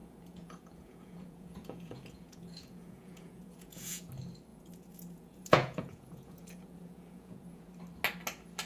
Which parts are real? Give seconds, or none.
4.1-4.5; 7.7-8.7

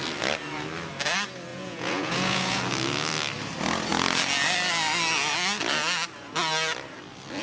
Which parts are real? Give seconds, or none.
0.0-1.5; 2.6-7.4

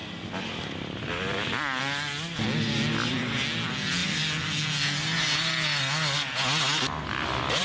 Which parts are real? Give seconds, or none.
0.0-7.6